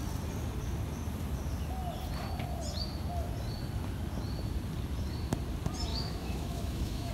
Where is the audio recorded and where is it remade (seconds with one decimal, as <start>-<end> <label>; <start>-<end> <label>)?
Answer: 0.0-5.9 recorded; 5.9-7.1 remade